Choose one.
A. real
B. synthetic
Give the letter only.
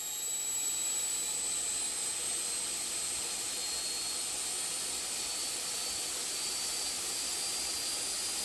A